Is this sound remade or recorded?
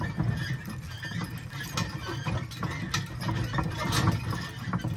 recorded